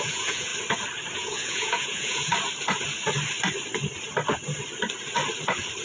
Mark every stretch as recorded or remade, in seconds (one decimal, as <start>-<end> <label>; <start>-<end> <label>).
0.0-0.5 remade; 0.5-1.1 recorded; 1.1-2.3 remade; 2.3-5.8 recorded